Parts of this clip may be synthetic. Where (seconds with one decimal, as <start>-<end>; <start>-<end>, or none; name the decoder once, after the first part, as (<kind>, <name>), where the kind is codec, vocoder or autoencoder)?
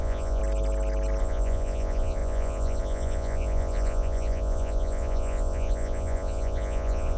0.0-0.4 (vocoder, Vocos); 1.2-7.2